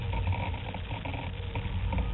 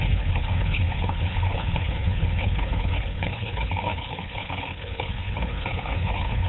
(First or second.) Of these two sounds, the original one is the first